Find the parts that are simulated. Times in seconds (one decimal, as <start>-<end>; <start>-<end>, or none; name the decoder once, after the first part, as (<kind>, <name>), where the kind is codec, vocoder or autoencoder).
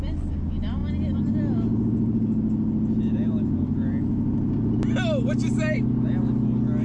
none